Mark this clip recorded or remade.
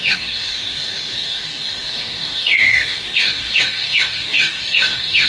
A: remade